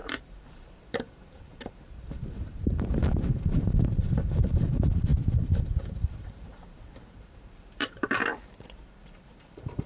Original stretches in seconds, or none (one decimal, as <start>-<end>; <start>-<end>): 5.1-5.6; 8.2-8.8